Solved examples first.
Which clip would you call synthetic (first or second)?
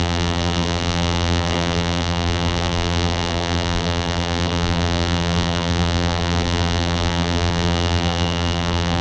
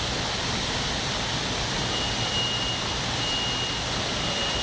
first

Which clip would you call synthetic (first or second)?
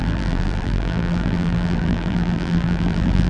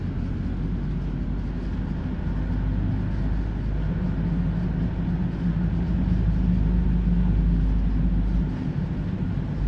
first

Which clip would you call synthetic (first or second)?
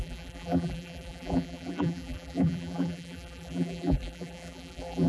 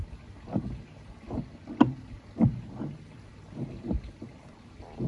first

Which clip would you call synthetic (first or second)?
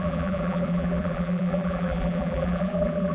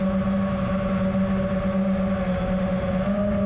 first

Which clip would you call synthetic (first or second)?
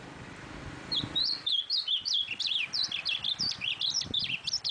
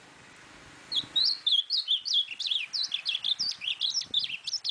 first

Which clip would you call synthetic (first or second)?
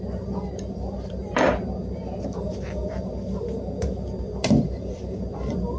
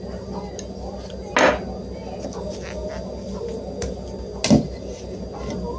first